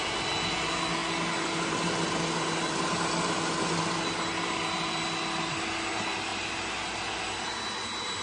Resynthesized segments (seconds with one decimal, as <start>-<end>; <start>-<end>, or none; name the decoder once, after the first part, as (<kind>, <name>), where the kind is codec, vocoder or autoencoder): none